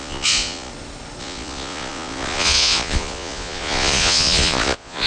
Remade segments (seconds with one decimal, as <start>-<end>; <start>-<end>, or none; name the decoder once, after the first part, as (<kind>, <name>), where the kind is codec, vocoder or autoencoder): 0.0-0.7 (vocoder, Vocos); 1.2-5.1